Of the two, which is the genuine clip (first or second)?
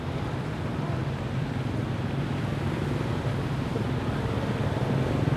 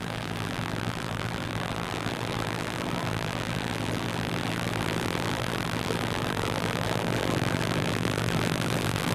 first